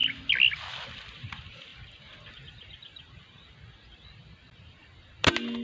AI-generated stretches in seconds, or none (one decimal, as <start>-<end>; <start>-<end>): none